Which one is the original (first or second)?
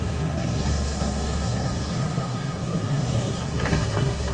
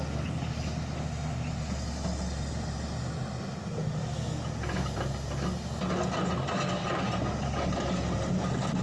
second